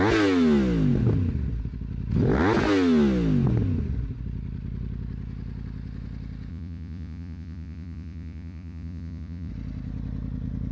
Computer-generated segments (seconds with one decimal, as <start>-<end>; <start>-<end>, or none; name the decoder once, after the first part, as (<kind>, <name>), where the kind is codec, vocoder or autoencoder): 6.5-9.5 (vocoder, Vocos)